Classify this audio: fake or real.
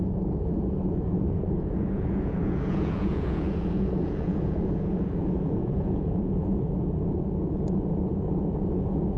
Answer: fake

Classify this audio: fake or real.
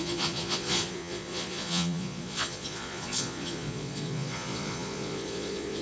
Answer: fake